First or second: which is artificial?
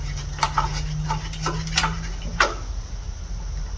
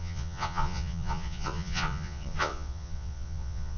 second